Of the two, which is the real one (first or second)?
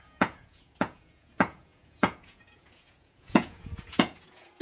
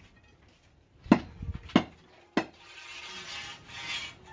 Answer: second